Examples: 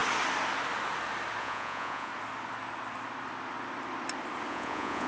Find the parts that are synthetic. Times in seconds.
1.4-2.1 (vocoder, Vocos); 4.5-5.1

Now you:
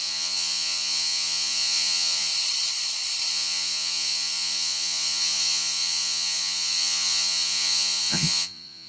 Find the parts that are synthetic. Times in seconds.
0.0-2.3 (vocoder, Vocos); 3.3-8.9

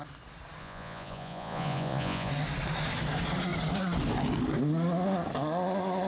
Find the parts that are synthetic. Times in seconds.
0.6-2.3 (vocoder, Vocos)

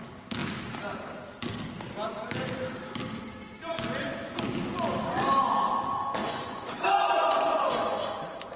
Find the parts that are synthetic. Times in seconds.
6.2-8.2 (vocoder, Vocos)

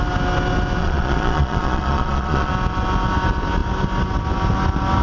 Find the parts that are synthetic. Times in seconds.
0.8-2.5 (vocoder, Vocos)

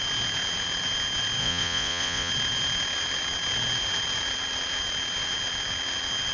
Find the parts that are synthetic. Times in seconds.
1.4-2.3 (vocoder, Vocos)